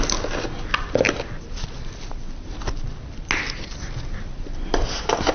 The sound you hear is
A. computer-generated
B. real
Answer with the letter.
B